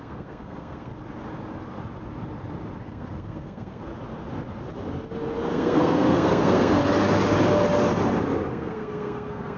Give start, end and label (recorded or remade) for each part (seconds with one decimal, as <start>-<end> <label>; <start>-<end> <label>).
0.0-0.9 remade; 0.9-2.8 recorded; 2.8-3.9 remade; 3.9-5.5 recorded; 5.5-6.8 remade; 6.8-8.5 recorded; 8.5-9.6 remade